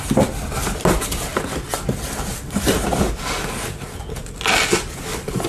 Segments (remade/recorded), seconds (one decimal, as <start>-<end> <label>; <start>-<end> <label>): 0.0-5.5 recorded